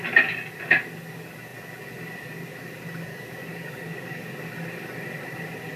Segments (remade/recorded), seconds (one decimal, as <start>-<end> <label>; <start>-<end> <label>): 0.0-3.1 recorded; 3.1-4.3 remade; 4.3-5.8 recorded